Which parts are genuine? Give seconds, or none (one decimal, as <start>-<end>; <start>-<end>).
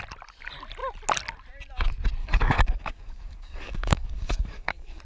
0.0-2.2